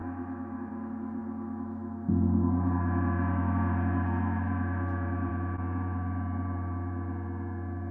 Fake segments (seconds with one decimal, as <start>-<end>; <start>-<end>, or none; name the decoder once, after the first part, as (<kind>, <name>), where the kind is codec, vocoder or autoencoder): 0.0-0.7 (autoencoder, DAC-VAE)